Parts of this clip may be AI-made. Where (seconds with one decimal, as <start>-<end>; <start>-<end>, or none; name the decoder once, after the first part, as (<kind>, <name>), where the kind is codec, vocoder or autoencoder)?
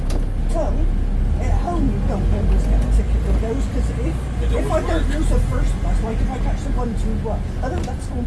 none